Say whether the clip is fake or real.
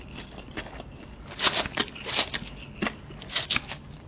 real